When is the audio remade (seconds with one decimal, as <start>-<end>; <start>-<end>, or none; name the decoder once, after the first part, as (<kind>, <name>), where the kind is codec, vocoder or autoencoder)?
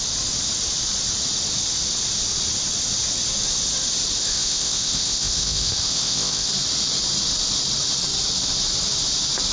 4.2-6.5 (codec, ZipCodec)